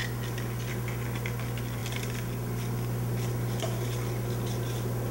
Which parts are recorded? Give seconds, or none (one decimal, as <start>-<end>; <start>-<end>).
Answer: 0.0-5.1